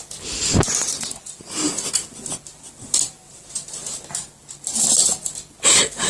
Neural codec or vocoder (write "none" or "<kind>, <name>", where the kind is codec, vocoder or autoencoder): none